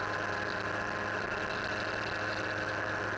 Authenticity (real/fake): real